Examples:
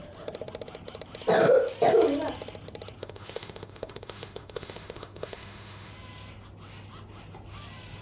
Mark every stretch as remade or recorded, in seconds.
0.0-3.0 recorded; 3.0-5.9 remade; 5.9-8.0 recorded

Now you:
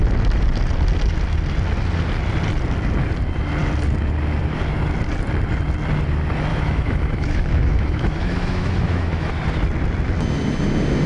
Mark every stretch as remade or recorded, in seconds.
0.0-6.5 recorded; 6.5-9.3 remade; 9.3-11.1 recorded

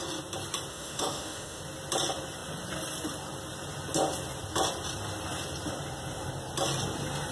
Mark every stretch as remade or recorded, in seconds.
0.0-0.7 recorded; 0.7-1.6 remade; 1.6-7.3 recorded

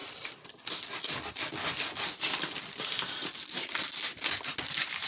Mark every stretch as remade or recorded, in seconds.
0.0-5.1 recorded

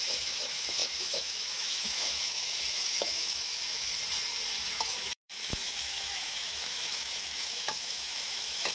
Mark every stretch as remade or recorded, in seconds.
0.0-3.9 remade; 3.9-4.7 recorded; 4.7-8.7 remade

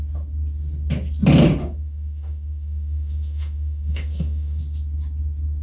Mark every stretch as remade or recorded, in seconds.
0.0-1.6 recorded; 1.6-4.6 remade; 4.6-5.6 recorded

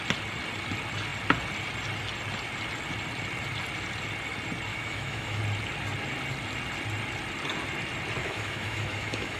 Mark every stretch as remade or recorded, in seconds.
0.0-4.7 recorded; 4.7-5.4 remade; 5.4-8.2 recorded; 8.2-9.4 remade

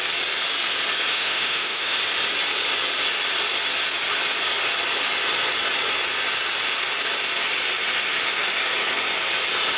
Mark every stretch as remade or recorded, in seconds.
0.0-1.1 recorded; 1.1-2.0 remade; 2.0-9.8 recorded